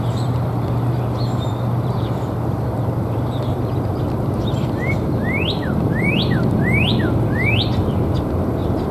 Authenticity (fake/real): fake